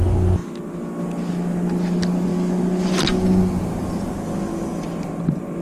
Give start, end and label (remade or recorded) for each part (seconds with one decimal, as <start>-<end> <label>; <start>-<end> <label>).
0.0-5.6 recorded